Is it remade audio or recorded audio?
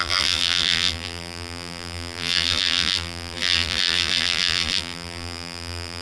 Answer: remade